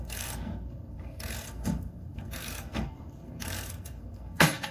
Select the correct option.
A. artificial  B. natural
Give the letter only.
A